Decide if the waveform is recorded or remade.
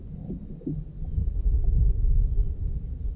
recorded